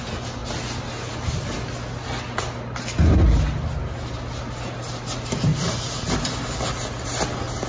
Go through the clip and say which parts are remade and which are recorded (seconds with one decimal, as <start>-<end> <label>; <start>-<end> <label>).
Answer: 0.0-7.7 recorded